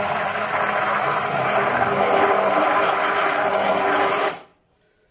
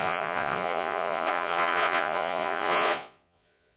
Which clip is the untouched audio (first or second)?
first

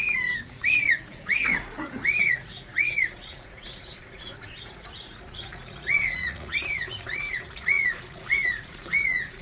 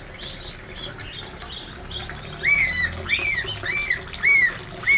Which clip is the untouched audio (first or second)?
second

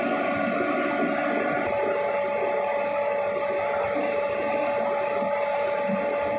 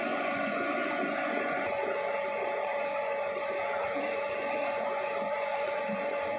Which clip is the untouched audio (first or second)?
first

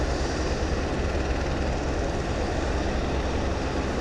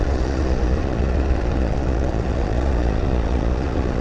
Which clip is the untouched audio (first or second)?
first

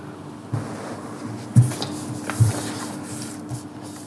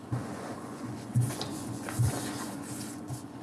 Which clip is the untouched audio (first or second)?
first